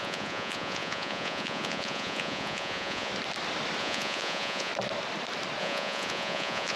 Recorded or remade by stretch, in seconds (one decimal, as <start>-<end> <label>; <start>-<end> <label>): 0.0-3.1 remade; 3.1-3.8 recorded; 3.8-4.7 remade; 4.7-5.6 recorded; 5.6-6.8 remade